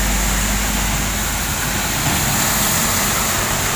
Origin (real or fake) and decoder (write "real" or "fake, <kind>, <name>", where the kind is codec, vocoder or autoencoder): real